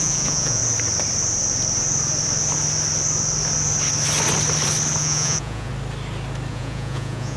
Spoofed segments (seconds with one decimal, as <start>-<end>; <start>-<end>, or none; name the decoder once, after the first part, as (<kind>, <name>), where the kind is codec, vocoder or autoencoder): 0.0-0.6 (vocoder, Vocos); 5.0-5.7; 6.5-7.4